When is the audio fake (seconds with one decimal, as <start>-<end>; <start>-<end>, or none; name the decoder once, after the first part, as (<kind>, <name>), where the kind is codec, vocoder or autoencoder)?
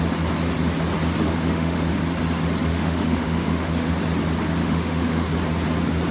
1.3-1.9 (autoencoder, DAC-VAE); 2.7-3.9; 4.6-5.3